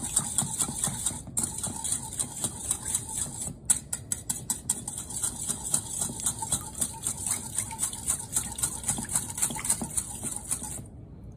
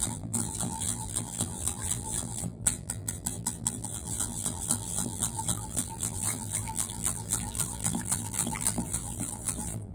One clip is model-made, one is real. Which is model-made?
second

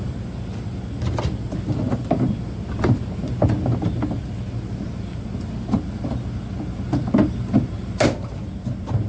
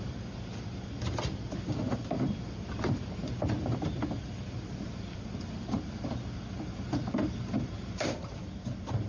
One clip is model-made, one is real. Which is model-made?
second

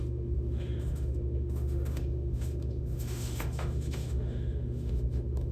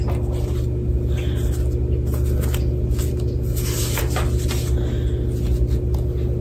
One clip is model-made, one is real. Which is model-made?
first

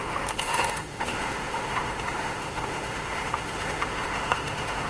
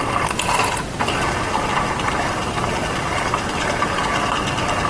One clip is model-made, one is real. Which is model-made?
first